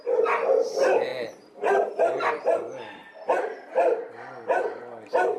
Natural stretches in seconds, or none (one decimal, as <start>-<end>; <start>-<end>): 0.0-5.4